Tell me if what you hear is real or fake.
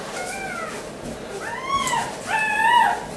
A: real